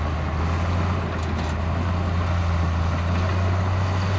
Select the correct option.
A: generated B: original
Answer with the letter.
B